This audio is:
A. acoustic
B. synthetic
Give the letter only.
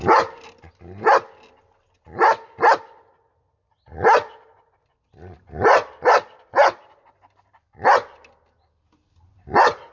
A